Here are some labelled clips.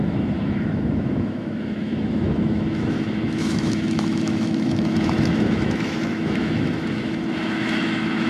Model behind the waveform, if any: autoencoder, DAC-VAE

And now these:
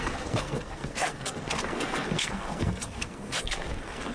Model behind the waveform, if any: codec, SNAC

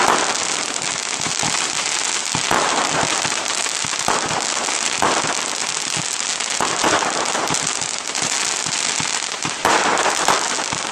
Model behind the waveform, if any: none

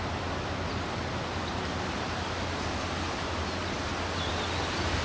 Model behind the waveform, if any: none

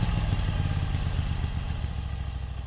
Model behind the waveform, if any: none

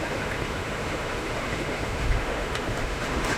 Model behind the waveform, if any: autoencoder, DAC-VAE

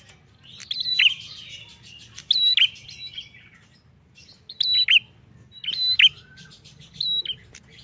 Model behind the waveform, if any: none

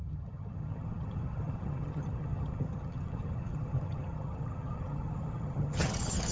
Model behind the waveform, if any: vocoder, HiFi-GAN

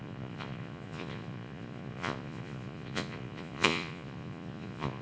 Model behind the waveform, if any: vocoder, Vocos